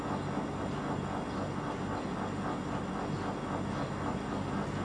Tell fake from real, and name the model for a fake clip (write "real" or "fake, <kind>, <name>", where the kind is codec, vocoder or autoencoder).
real